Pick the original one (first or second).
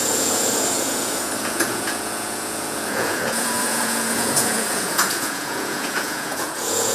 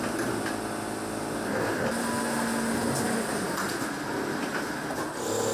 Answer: second